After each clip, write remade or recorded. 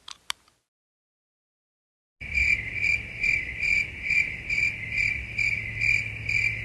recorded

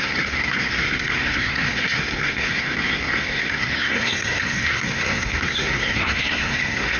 remade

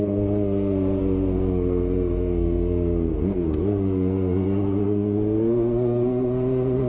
remade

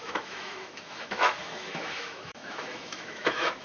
remade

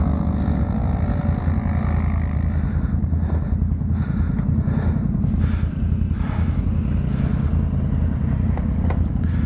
recorded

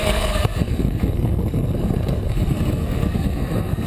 remade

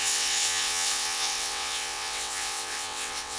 remade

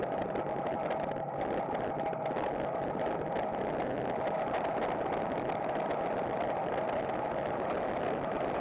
recorded